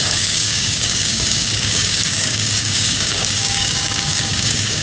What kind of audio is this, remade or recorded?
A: remade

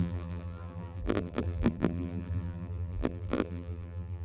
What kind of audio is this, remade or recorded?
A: remade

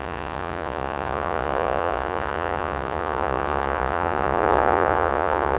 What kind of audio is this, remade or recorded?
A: remade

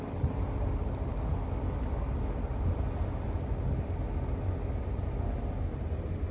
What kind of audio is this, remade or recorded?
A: recorded